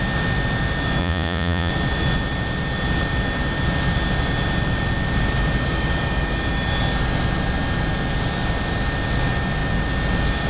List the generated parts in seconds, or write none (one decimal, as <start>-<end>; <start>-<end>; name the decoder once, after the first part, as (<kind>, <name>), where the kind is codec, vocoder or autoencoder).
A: 1.0-1.7 (vocoder, Vocos)